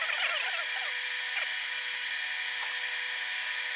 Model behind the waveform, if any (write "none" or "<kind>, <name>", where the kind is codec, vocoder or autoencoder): none